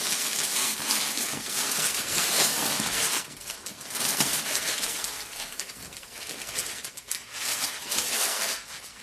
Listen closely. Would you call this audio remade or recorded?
remade